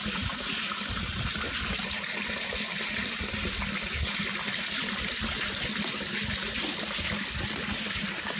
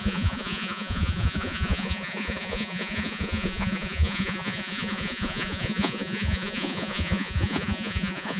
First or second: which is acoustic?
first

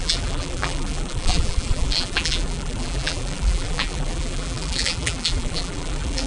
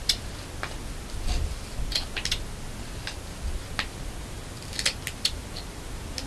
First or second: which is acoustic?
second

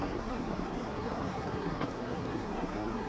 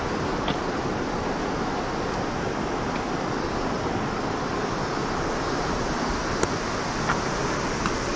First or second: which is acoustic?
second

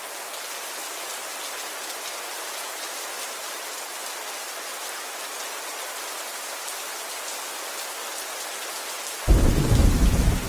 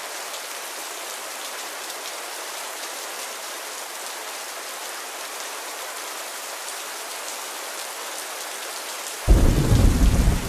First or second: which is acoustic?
first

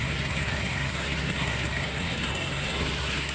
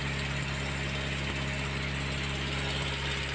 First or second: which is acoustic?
second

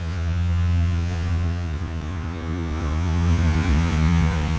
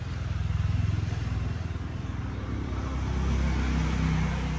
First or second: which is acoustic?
second